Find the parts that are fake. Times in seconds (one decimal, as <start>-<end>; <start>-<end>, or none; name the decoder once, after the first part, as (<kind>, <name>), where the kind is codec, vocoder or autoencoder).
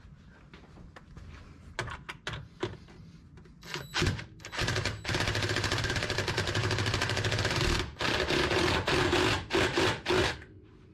none